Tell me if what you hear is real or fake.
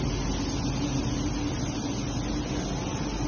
real